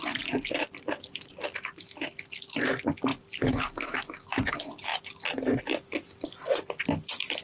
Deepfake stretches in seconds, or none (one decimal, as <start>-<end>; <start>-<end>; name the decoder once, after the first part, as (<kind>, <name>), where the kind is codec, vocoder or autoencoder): none